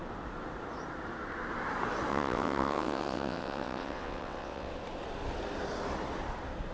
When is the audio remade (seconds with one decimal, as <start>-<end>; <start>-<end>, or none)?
2.1-4.7